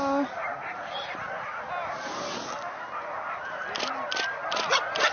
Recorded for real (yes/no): yes